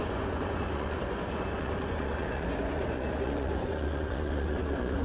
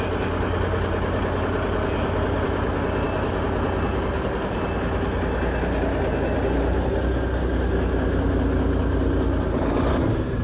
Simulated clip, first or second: first